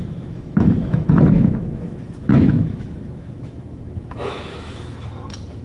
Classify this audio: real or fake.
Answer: fake